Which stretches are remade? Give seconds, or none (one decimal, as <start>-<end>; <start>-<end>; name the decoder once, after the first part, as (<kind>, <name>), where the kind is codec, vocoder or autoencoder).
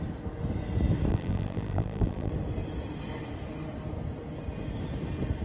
1.1-2.3 (vocoder, BigVGAN v2)